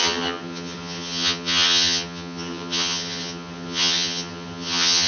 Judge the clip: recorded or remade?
remade